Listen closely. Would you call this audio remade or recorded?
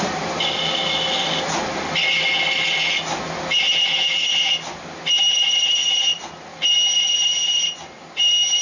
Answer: recorded